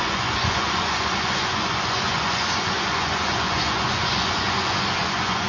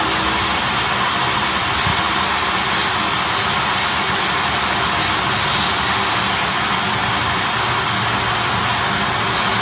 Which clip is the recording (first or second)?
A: second